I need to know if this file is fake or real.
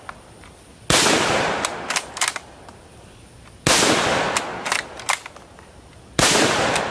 real